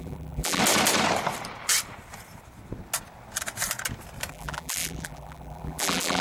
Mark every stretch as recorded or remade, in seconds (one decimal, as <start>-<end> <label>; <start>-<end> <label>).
0.0-0.6 remade; 0.6-4.3 recorded; 4.3-6.2 remade

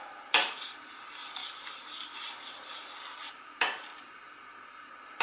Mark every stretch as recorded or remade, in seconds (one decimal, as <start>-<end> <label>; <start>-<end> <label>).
0.0-5.2 recorded

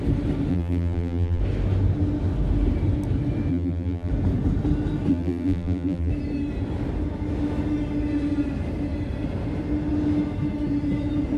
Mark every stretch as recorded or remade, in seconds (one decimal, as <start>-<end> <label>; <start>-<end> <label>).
0.0-0.5 recorded; 0.5-1.4 remade; 1.4-3.5 recorded; 3.5-4.1 remade; 4.1-5.1 recorded; 5.1-6.1 remade; 6.1-11.4 recorded

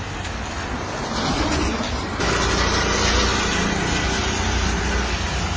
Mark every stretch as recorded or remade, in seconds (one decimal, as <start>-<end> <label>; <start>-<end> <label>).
0.0-4.2 recorded; 4.2-4.8 remade; 4.8-5.6 recorded